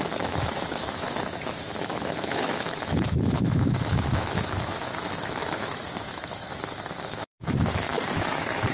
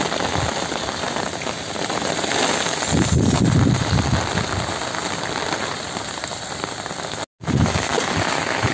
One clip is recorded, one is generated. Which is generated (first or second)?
first